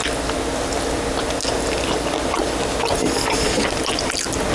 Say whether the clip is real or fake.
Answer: real